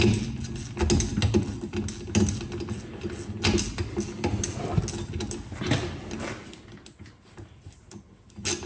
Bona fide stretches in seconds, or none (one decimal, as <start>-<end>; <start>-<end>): 0.0-8.7